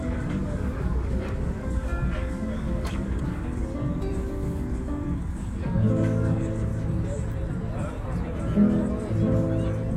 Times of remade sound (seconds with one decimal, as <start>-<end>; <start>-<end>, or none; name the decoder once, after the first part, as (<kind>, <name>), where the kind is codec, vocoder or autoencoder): 0.0-6.7 (codec, DAC)

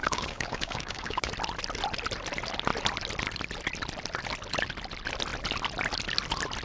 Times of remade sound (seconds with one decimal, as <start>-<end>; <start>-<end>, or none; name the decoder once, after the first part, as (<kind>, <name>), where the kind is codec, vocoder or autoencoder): 0.0-1.3 (codec, DAC)

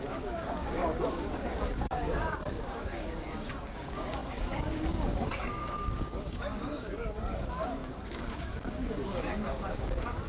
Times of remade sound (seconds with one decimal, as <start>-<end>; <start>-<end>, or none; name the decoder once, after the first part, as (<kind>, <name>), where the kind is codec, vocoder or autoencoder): 0.0-10.3 (codec, DAC)

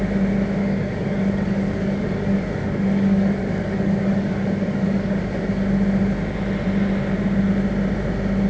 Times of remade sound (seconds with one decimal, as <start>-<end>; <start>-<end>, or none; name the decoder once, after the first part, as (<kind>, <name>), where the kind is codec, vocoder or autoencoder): 0.6-5.5 (codec, DAC)

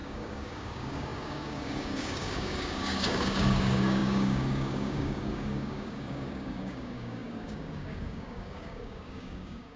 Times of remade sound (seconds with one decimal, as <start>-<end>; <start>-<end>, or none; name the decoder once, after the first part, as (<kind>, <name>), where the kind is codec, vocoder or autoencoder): 0.0-9.8 (codec, DAC)